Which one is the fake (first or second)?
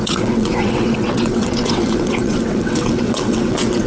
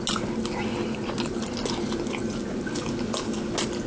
first